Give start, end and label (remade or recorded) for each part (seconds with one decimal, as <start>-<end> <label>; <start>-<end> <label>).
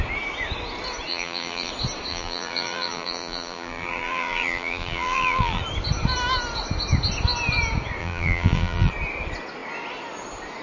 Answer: 0.0-1.1 recorded; 1.1-1.7 remade; 1.7-2.1 recorded; 2.1-5.6 remade; 5.6-8.0 recorded; 8.0-8.9 remade; 8.9-10.6 recorded